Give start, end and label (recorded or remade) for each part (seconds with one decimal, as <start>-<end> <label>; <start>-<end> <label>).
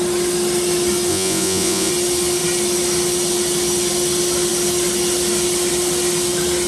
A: 0.0-1.1 recorded; 1.1-1.9 remade; 1.9-6.7 recorded